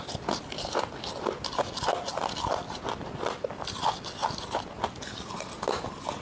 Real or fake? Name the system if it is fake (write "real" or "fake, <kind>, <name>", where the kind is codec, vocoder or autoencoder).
real